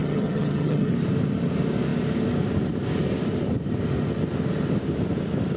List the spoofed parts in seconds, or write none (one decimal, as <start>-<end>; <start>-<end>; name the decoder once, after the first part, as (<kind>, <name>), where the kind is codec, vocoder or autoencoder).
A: 0.0-0.9 (vocoder, HiFi-GAN)